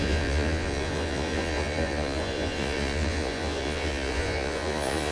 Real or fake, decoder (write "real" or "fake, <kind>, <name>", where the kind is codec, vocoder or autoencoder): fake, vocoder, Vocos